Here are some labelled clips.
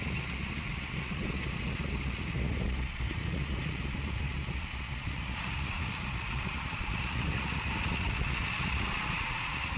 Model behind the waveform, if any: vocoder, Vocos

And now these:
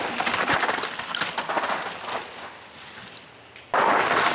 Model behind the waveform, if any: none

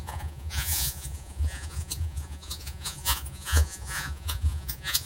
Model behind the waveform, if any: vocoder, Vocos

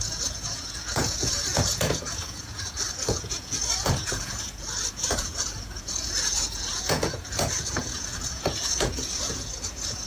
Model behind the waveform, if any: vocoder, Vocos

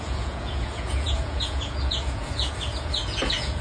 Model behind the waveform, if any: vocoder, Vocos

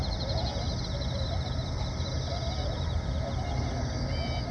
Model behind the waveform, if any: none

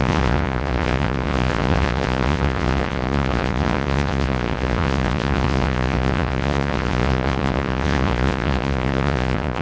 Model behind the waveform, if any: vocoder, Vocos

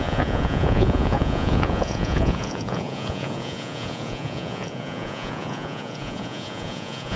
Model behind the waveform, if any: vocoder, Vocos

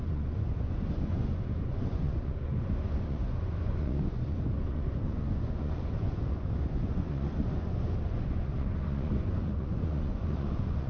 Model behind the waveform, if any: vocoder, Vocos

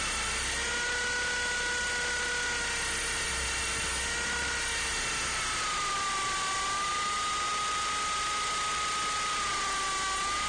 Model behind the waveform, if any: none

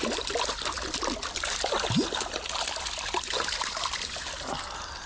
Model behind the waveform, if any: none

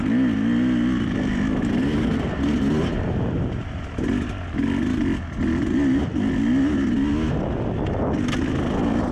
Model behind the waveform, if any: none